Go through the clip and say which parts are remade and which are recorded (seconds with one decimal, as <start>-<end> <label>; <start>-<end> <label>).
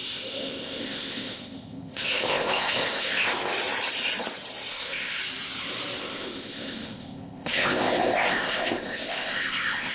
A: 0.0-3.5 remade; 3.5-4.7 recorded; 4.7-5.2 remade; 5.2-6.0 recorded; 6.0-9.9 remade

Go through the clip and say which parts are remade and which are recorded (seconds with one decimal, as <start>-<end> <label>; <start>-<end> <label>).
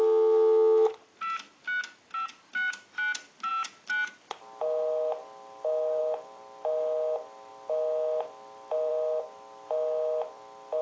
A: 0.0-10.8 recorded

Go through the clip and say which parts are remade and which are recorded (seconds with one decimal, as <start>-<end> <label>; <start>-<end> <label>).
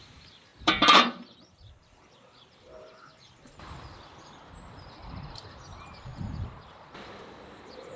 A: 0.0-8.0 remade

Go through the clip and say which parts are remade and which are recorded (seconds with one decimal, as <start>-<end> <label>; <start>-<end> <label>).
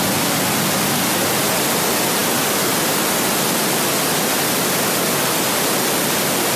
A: 0.0-6.6 recorded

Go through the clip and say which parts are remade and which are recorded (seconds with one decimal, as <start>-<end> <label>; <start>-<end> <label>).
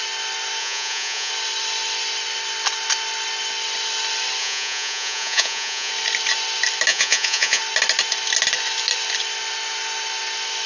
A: 0.0-0.6 recorded; 0.6-1.3 remade; 1.3-4.4 recorded; 4.4-5.9 remade; 5.9-6.9 recorded; 6.9-7.6 remade; 7.6-10.7 recorded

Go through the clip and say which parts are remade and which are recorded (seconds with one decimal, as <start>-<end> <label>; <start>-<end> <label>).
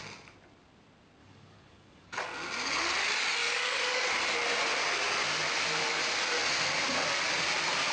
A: 0.0-1.2 recorded; 1.2-2.2 remade; 2.2-3.4 recorded; 3.4-4.1 remade; 4.1-7.9 recorded